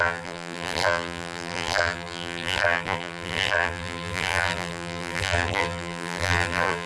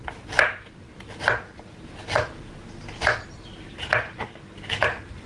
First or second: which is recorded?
second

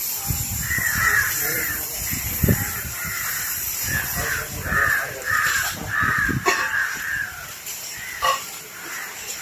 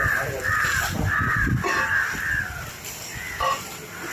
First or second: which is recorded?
second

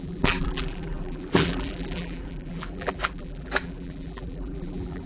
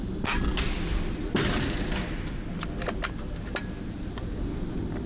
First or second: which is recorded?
second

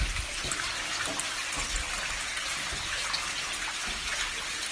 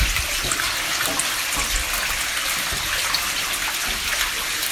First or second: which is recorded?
first